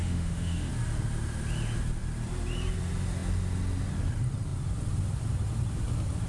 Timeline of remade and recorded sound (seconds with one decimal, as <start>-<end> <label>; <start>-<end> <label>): 0.0-0.7 remade; 0.7-6.3 recorded